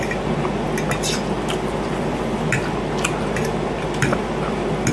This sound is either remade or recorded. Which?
recorded